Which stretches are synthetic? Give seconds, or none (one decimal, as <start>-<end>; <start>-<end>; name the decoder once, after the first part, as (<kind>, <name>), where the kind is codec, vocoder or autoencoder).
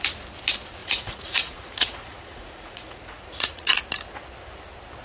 0.8-3.8 (vocoder, Vocos)